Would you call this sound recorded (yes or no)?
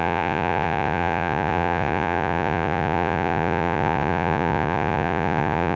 no